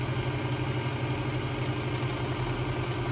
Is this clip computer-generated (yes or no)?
no